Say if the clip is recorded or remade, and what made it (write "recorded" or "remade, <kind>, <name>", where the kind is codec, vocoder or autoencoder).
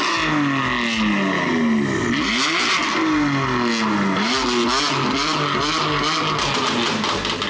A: recorded